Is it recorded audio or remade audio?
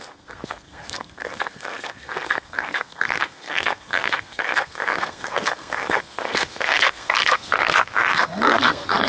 remade